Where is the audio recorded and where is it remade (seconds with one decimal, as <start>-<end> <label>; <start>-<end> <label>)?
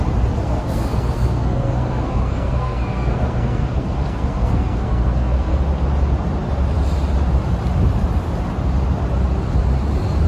0.0-0.4 recorded; 0.4-5.6 remade; 5.6-10.3 recorded